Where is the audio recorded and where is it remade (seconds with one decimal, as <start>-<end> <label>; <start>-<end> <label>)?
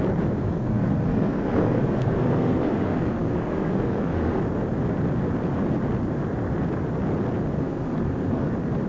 0.0-0.4 recorded; 0.4-4.4 remade; 4.4-7.6 recorded; 7.6-8.5 remade; 8.5-8.9 recorded